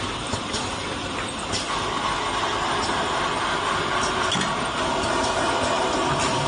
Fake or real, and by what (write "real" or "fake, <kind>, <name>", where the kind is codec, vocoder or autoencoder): real